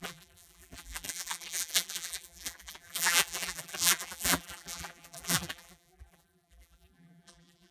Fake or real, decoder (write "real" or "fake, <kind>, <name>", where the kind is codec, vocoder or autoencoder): fake, vocoder, BigVGAN v2